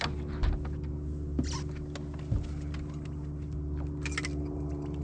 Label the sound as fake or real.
real